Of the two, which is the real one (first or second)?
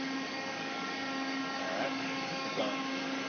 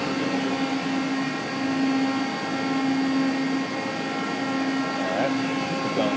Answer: second